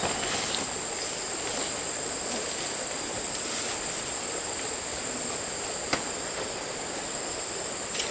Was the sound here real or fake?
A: real